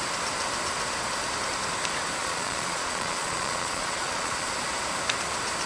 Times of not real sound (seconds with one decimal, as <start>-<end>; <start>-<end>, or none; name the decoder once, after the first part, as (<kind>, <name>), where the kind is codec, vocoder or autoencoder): 2.2-4.5 (vocoder, Vocos)